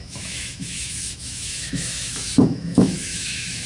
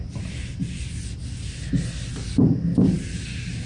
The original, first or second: second